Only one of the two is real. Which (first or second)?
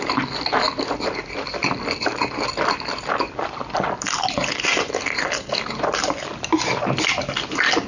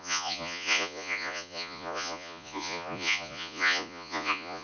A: first